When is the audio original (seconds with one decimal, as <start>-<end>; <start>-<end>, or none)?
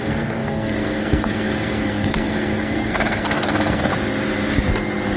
3.9-5.2